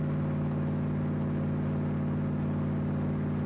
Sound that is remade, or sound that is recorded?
recorded